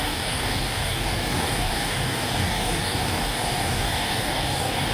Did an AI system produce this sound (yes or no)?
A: yes